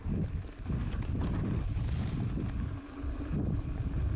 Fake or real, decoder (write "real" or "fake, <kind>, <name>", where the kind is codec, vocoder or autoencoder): real